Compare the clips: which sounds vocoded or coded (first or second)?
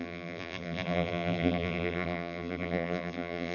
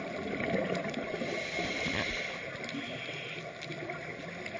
first